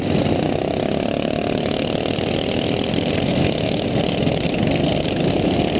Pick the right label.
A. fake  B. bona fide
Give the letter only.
B